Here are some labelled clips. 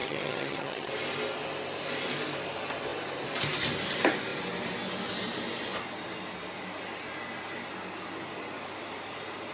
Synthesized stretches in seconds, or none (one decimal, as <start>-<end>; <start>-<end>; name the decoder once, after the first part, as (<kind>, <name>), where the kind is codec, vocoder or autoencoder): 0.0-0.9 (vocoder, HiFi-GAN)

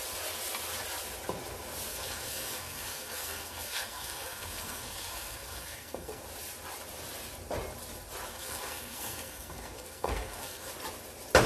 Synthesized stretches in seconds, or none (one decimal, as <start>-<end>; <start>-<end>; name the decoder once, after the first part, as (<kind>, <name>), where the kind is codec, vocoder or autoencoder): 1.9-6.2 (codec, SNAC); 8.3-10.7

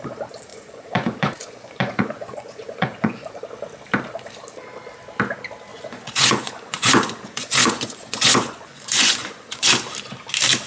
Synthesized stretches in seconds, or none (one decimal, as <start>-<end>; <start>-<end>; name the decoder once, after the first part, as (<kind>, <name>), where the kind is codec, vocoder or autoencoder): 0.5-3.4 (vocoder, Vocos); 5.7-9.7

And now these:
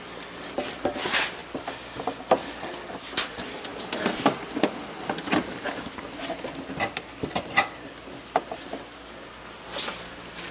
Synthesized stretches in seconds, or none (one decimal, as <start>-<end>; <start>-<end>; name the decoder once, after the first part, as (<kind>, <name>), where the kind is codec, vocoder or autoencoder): none

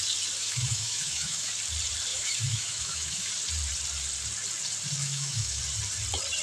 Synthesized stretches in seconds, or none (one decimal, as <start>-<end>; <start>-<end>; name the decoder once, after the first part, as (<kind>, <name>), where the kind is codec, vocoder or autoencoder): 0.4-1.5 (autoencoder, DAC-VAE); 2.1-3.3; 5.0-5.6

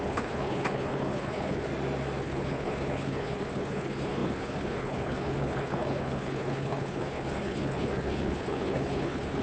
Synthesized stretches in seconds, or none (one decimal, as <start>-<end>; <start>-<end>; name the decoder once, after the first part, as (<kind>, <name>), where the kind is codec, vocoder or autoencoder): 0.0-1.7 (codec, HILCodec); 2.2-9.4

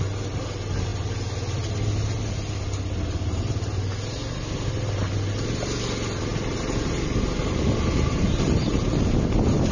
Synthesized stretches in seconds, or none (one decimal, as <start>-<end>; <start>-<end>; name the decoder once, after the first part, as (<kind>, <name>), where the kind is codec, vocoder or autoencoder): none